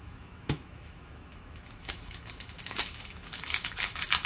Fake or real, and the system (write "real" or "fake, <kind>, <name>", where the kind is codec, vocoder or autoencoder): fake, autoencoder, DAC-VAE